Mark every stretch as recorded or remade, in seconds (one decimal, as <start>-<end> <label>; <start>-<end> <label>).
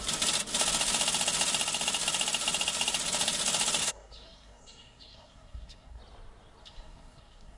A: 0.0-3.8 recorded; 3.8-6.0 remade; 6.0-6.6 recorded; 6.6-7.6 remade